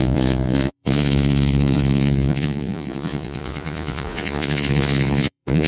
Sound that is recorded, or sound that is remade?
remade